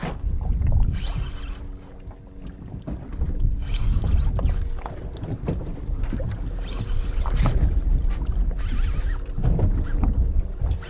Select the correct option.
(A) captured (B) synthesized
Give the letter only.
A